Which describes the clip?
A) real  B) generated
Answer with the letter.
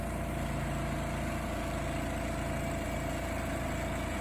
A